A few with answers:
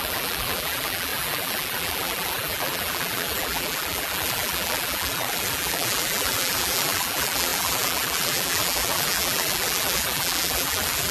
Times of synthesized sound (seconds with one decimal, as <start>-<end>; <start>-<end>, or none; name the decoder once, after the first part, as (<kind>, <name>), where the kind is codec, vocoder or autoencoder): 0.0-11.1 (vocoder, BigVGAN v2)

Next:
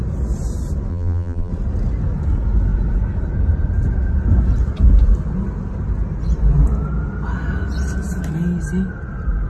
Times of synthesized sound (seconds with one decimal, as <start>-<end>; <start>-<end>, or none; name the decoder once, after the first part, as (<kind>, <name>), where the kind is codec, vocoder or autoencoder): 0.9-1.5 (vocoder, BigVGAN v2)

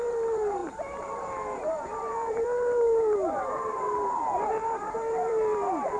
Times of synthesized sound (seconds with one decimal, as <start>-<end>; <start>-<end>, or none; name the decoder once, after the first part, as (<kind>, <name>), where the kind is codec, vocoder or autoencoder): 0.0-6.0 (vocoder, BigVGAN v2)